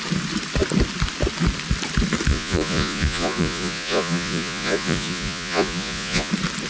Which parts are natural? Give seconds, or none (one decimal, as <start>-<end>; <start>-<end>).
0.0-2.3; 6.3-6.7